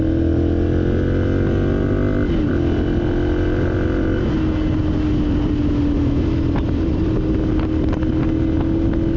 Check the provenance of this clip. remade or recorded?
recorded